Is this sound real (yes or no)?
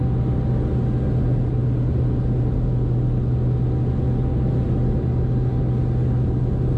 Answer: yes